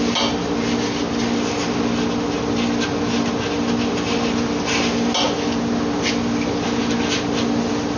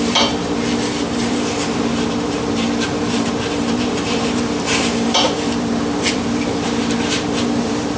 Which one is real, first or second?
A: first